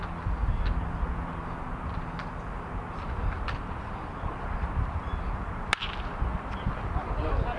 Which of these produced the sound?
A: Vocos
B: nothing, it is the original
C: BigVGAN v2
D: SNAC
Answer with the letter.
B